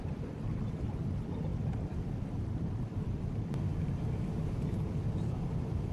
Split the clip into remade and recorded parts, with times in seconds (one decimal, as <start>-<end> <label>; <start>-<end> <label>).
0.0-5.9 recorded